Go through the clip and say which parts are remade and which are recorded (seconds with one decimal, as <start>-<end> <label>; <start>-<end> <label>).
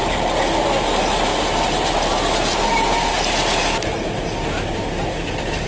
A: 0.0-5.7 recorded